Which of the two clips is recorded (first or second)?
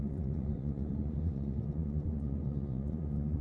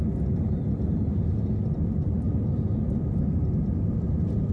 second